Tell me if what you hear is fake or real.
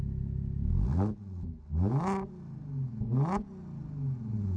real